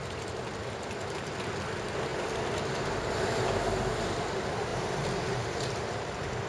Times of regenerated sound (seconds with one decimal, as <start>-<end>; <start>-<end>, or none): 4.7-6.5